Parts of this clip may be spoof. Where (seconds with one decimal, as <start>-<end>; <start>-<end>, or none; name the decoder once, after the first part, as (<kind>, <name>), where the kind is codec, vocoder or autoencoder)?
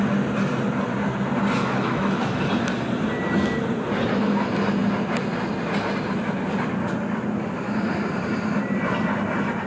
1.6-2.4 (autoencoder, DAC-VAE)